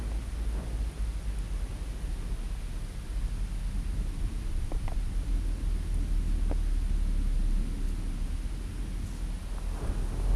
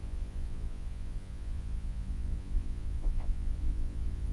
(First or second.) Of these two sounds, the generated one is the second